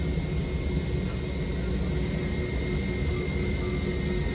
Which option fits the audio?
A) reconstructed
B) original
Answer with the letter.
B